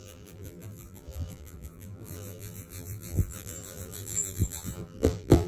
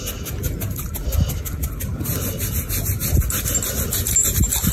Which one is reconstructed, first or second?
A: first